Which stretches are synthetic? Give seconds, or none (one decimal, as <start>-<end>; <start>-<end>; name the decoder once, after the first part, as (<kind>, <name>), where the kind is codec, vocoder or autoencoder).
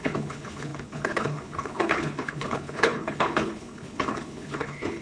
0.0-5.0 (codec, HILCodec)